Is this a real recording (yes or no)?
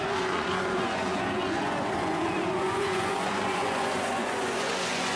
no